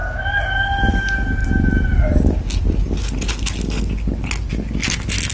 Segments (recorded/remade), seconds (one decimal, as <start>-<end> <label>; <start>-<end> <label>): 0.0-5.3 recorded